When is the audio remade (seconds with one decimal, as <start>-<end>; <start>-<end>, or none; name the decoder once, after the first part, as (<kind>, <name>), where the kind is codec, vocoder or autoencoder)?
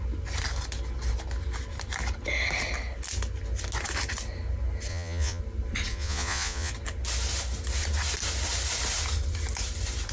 4.9-5.4 (vocoder, Vocos); 5.9-6.7